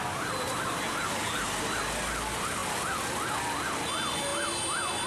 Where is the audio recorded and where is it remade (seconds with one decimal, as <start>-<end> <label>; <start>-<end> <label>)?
0.0-5.1 recorded